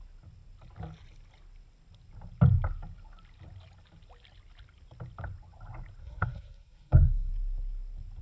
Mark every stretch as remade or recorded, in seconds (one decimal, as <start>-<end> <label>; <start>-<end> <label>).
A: 0.0-6.0 recorded; 6.0-7.3 remade; 7.3-8.2 recorded